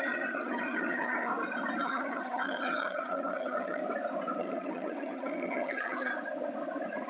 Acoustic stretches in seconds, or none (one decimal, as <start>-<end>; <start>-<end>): 1.3-1.8; 3.8-4.4; 6.1-7.1